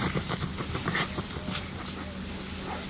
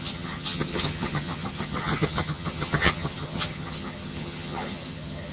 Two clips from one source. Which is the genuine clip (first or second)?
first